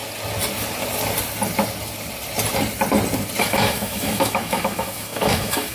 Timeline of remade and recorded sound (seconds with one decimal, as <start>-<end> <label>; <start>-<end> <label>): 0.0-3.4 recorded; 3.4-5.7 remade